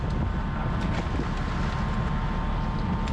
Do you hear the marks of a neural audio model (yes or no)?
no